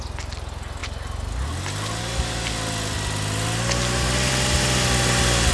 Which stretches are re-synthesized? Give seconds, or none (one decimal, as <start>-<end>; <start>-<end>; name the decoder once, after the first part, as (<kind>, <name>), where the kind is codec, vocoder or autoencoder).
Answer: none